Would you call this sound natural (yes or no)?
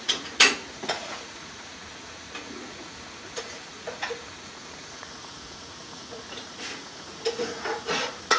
no